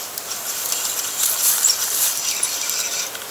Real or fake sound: real